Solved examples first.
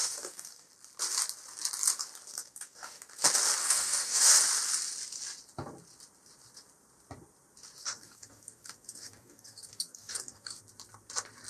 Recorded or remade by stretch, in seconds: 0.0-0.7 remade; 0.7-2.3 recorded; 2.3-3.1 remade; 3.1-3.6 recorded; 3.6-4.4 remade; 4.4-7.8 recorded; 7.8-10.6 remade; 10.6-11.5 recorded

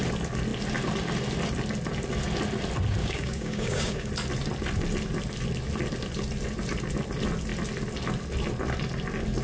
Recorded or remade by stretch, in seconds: 0.0-3.0 recorded; 3.0-4.1 remade; 4.1-9.4 recorded

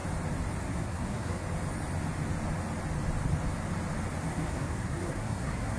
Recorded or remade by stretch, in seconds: 0.0-0.6 recorded; 0.6-1.4 remade; 1.4-4.2 recorded; 4.2-5.8 remade

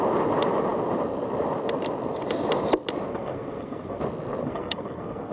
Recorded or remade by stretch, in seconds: 0.0-3.1 recorded; 3.1-4.0 remade; 4.0-4.4 recorded; 4.4-5.3 remade

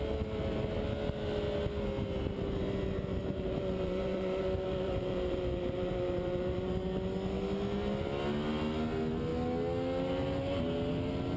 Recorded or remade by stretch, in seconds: 0.0-3.2 recorded; 3.2-6.8 remade; 6.8-11.4 recorded

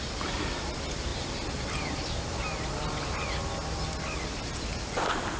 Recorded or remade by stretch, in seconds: 0.0-5.4 recorded